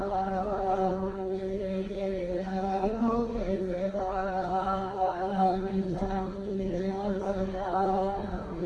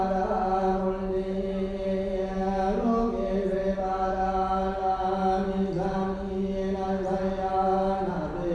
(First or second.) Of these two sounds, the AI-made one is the first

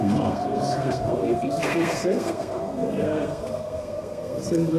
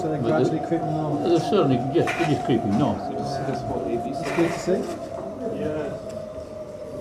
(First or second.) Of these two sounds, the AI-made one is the first